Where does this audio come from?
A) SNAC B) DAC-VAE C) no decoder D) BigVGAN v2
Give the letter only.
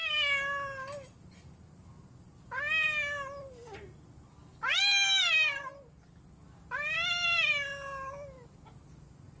C